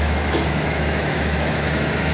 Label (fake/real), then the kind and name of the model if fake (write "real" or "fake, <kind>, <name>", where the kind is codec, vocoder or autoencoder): fake, autoencoder, DAC-VAE